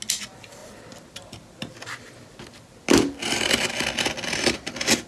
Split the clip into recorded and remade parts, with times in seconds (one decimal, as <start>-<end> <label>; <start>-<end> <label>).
0.0-5.1 recorded